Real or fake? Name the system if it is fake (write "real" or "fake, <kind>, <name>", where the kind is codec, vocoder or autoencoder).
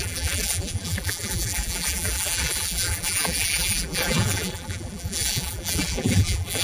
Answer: fake, vocoder, BigVGAN v2